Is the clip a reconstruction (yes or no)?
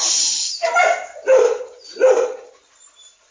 no